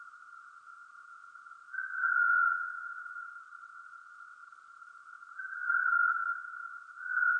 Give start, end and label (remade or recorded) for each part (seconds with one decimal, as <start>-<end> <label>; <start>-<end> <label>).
0.0-2.2 recorded; 2.2-4.3 remade; 4.3-7.4 recorded